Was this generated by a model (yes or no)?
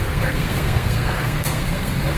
yes